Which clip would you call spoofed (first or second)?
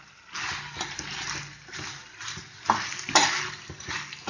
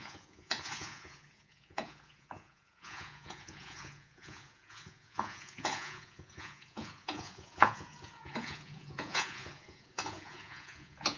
second